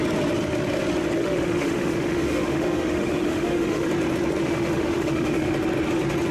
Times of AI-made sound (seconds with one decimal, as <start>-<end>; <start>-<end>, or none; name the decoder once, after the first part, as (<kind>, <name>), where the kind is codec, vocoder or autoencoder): 1.2-3.9 (autoencoder, DAC-VAE); 4.4-5.5